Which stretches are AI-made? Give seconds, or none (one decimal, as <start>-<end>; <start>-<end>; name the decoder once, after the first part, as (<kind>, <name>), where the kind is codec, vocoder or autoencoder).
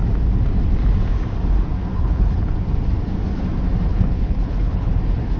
1.9-2.5 (codec, HILCodec); 3.9-4.9